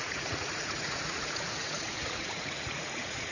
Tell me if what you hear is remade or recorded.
remade